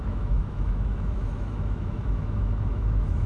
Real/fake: fake